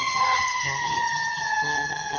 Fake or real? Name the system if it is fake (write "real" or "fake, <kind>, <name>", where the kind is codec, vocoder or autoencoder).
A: fake, vocoder, HiFi-GAN